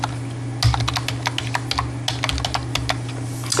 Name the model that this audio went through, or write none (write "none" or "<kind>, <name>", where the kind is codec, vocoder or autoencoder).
none